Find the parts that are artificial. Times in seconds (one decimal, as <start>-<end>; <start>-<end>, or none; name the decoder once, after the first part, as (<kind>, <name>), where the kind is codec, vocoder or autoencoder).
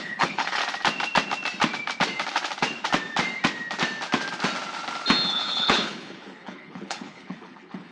0.0-0.6 (codec, HILCodec); 5.3-7.9